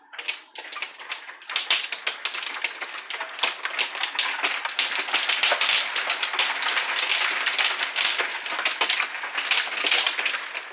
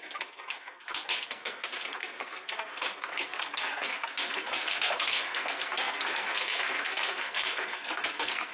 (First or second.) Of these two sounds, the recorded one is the first